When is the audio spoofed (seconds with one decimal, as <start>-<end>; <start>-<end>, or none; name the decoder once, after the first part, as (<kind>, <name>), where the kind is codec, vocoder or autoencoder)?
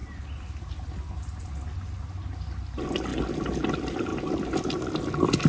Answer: none